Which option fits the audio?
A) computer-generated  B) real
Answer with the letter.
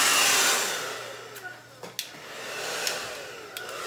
B